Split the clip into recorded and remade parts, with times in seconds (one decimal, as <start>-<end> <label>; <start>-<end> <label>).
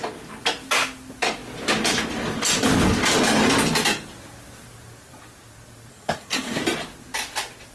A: 0.0-5.9 recorded; 5.9-6.6 remade; 6.6-7.7 recorded